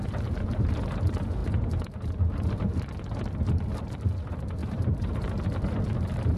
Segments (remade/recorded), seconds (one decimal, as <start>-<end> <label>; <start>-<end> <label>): 0.0-4.6 recorded; 4.6-5.4 remade; 5.4-6.4 recorded